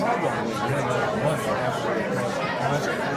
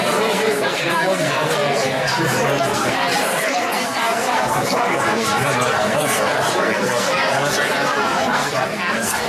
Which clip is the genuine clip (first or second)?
first